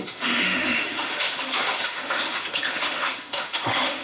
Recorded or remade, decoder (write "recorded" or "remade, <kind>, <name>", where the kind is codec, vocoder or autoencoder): remade, autoencoder, DAC-VAE